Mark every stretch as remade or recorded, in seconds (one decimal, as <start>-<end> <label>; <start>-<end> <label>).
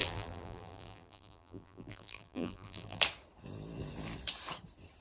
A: 0.0-3.0 remade; 3.0-5.0 recorded